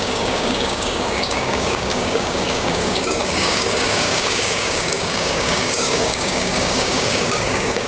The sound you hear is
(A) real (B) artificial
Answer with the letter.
B